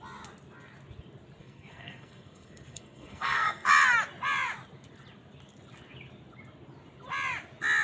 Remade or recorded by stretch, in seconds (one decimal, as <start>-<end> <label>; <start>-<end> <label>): 0.0-1.4 recorded; 1.4-3.7 remade; 3.7-7.8 recorded